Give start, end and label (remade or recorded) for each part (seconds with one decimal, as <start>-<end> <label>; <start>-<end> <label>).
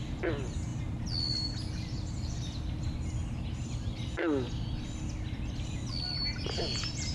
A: 0.0-7.1 recorded